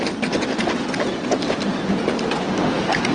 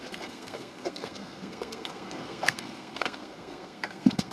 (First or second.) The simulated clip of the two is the second